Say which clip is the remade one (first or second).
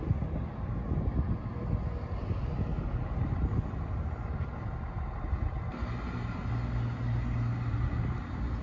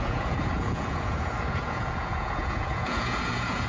second